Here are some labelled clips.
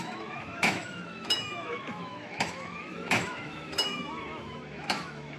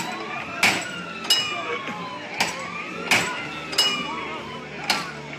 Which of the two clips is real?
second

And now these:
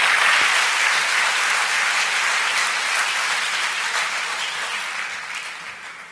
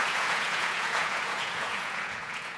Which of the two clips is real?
first